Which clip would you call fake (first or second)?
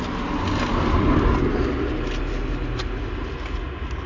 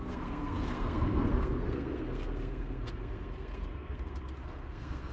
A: second